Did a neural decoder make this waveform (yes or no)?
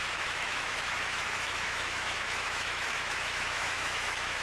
yes